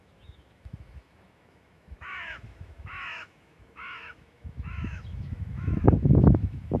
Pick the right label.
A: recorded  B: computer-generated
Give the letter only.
B